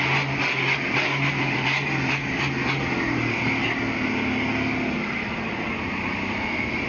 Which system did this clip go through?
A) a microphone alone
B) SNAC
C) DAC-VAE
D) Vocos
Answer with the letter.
A